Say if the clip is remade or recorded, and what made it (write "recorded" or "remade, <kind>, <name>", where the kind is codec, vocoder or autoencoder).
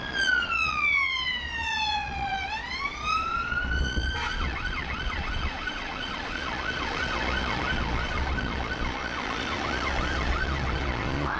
remade, vocoder, Vocos